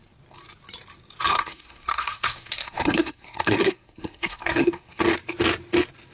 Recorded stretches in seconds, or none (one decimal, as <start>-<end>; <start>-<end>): 0.0-1.3; 5.0-6.1